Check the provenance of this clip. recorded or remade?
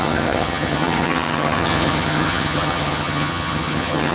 remade